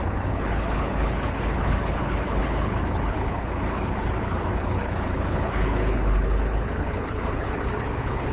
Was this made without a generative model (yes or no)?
no